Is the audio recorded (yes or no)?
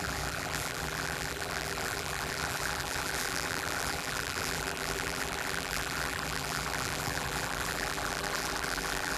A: no